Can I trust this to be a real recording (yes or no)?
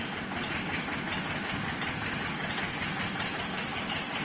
yes